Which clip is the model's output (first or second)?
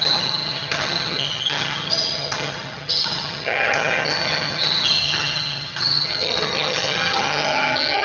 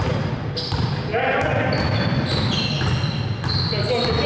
first